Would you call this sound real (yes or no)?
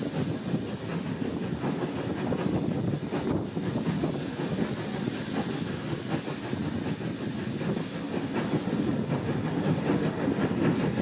yes